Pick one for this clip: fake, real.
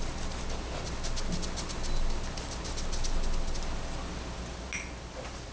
real